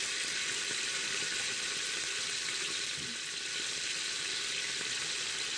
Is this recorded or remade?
recorded